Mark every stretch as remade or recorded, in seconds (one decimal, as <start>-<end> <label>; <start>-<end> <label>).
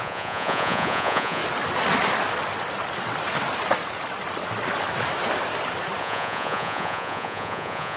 0.0-1.4 remade; 1.4-6.0 recorded; 6.0-8.0 remade